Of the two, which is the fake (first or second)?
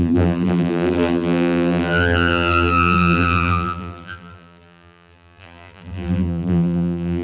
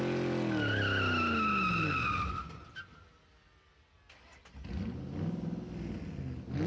first